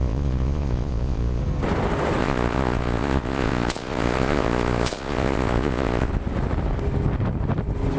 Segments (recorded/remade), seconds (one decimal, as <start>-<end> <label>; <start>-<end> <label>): 0.0-1.4 remade; 1.4-2.2 recorded; 2.2-6.1 remade; 6.1-8.0 recorded